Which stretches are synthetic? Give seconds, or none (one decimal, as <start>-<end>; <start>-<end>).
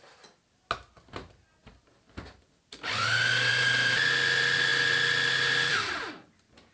none